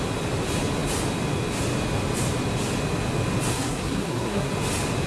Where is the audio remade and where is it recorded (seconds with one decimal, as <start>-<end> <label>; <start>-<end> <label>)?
0.0-3.5 recorded; 3.5-4.5 remade; 4.5-5.1 recorded